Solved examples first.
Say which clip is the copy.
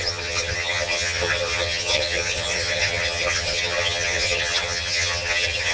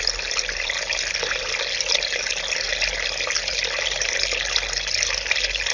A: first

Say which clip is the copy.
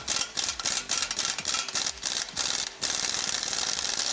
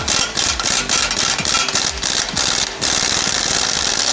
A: first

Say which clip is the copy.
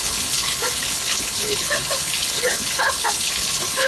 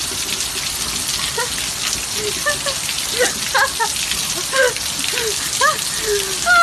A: first